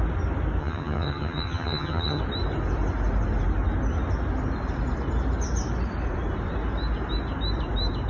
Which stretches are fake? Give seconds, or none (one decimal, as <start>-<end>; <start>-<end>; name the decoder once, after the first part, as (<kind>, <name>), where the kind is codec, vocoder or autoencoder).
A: 0.6-2.2 (vocoder, HiFi-GAN)